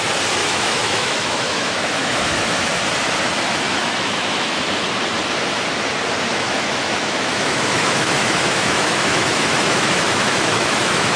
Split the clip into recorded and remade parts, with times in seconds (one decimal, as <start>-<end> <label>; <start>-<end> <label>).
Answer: 0.0-0.4 recorded; 0.4-2.8 remade; 2.8-3.8 recorded; 3.8-4.6 remade; 4.6-6.3 recorded; 6.3-11.2 remade